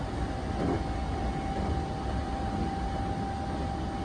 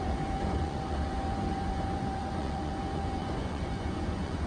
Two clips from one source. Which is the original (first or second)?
first